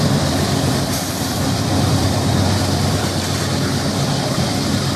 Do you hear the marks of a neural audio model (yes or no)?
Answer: yes